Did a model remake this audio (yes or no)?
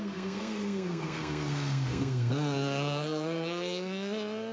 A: yes